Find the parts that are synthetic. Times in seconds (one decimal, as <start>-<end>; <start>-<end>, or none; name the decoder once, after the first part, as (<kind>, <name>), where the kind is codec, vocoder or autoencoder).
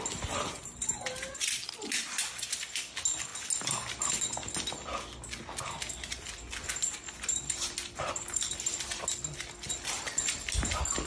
none